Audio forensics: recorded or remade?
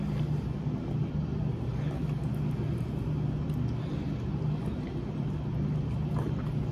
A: recorded